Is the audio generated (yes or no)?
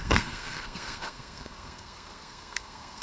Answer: yes